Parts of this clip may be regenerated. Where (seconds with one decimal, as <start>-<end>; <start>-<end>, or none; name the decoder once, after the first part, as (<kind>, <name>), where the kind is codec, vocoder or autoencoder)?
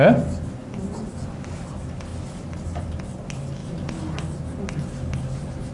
none